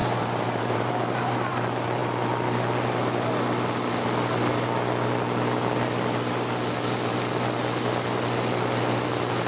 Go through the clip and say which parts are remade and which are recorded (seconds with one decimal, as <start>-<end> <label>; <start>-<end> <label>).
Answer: 0.0-1.5 remade; 1.5-9.5 recorded